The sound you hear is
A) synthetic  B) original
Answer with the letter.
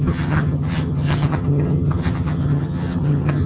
A